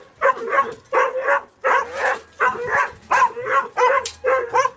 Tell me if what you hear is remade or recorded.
recorded